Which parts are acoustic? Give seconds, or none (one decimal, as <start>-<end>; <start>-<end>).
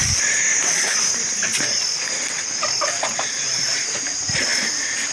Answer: 0.0-5.1